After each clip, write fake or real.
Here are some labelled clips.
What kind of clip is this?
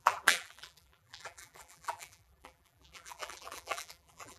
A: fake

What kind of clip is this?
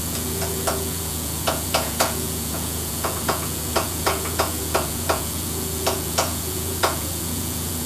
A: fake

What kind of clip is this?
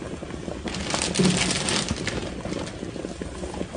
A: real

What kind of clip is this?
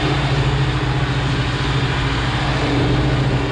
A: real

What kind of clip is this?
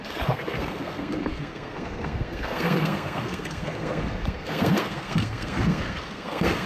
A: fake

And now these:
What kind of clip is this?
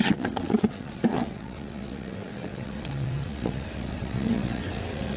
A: fake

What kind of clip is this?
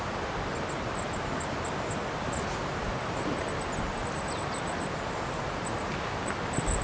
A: real